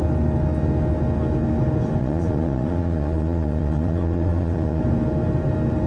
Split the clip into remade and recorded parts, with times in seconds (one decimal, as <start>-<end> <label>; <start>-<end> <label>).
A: 0.0-2.0 recorded; 2.0-4.8 remade; 4.8-5.9 recorded